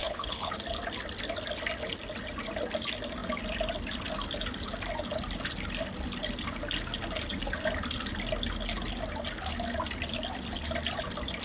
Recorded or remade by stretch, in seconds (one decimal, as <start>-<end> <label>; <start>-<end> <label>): 0.0-0.5 remade; 0.5-11.4 recorded